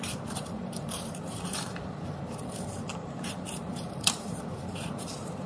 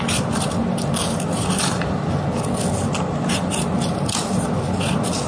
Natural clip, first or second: second